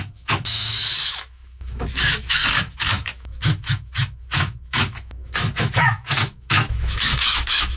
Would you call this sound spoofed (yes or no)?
yes